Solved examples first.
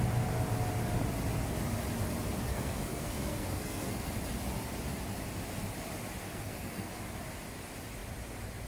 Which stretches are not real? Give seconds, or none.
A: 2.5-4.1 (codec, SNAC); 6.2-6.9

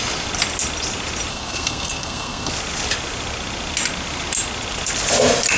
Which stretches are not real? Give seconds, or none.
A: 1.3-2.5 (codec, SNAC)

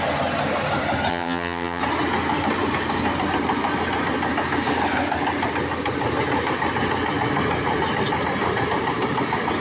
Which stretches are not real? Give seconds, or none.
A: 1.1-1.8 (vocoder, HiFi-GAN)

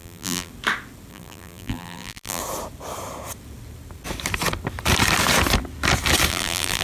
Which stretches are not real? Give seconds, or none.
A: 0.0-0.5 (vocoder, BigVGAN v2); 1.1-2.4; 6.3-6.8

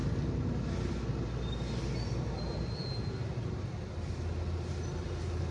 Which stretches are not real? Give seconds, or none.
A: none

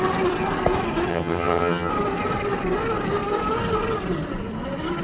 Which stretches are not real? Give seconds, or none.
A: 1.1-1.9 (vocoder, HiFi-GAN)